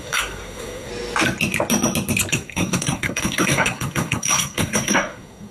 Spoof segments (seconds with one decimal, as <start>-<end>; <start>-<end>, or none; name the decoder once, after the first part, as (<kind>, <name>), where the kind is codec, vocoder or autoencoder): 0.0-0.9 (codec, SNAC); 2.3-5.5